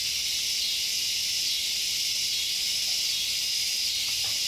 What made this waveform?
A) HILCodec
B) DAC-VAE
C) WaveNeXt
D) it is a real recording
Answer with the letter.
D